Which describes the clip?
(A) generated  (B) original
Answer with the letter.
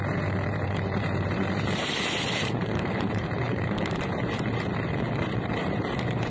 A